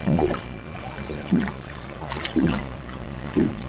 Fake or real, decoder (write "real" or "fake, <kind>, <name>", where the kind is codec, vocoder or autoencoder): fake, vocoder, Vocos